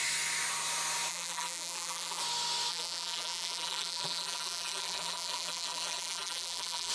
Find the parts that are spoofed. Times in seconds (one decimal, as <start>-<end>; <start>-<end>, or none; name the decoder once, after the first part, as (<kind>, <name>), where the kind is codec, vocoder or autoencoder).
1.1-2.2 (vocoder, BigVGAN v2); 2.7-6.9